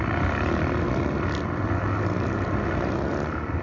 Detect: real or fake real